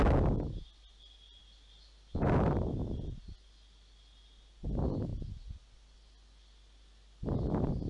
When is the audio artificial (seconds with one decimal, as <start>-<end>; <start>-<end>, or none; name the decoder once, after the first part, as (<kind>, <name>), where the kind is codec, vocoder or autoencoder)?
none